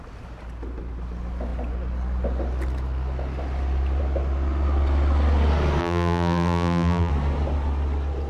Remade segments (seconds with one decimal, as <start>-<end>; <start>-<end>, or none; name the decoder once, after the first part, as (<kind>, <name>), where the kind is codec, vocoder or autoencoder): 5.8-7.1 (vocoder, BigVGAN v2)